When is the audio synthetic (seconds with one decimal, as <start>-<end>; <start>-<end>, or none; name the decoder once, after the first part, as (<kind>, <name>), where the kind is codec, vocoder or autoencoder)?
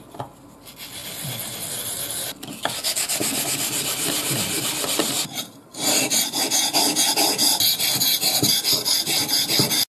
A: none